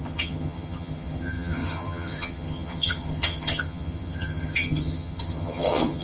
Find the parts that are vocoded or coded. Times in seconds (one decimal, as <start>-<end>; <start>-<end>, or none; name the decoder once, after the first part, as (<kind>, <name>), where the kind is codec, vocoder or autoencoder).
0.0-6.0 (vocoder, HiFi-GAN)